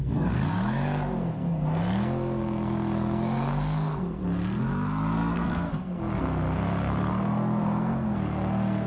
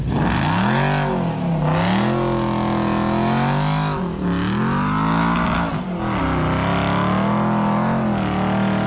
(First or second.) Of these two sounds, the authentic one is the second